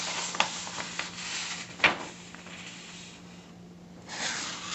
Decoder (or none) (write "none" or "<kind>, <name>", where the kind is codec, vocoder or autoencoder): none